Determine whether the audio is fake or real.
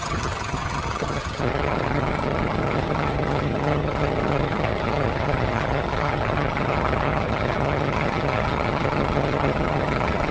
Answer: fake